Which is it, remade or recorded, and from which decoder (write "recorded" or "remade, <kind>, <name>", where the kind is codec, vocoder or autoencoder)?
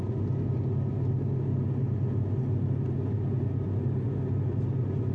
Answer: recorded